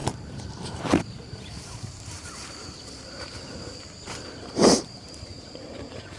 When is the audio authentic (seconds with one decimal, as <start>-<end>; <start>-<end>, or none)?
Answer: none